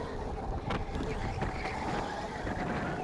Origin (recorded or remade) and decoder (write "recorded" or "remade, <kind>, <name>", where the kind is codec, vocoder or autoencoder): recorded